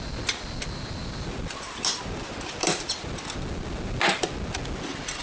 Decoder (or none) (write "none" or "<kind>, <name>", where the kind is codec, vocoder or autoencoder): none